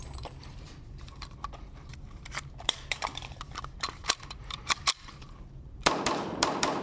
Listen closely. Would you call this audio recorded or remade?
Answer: remade